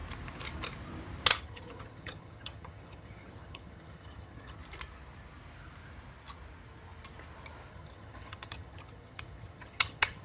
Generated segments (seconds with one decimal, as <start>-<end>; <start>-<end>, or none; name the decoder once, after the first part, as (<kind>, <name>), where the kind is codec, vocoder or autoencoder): 1.3-4.6 (vocoder, HiFi-GAN); 7.7-10.2